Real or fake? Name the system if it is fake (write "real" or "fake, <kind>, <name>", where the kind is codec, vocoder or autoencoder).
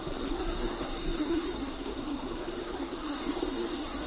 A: fake, codec, SNAC